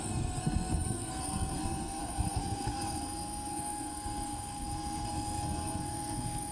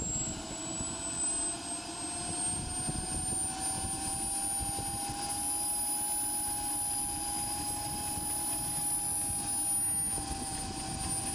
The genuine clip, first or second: second